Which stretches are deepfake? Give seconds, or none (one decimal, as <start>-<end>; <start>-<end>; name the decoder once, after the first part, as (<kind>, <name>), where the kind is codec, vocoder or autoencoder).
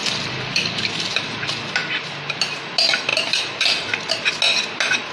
0.0-0.8 (vocoder, BigVGAN v2); 3.1-4.3